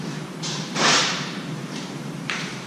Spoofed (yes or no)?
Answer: yes